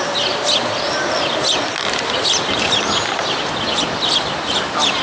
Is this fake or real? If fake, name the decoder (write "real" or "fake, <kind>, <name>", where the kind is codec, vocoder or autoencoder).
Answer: real